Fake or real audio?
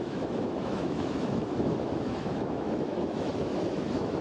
fake